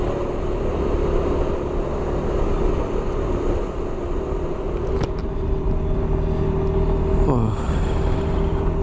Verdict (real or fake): real